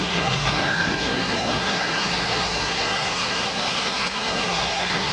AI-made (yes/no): yes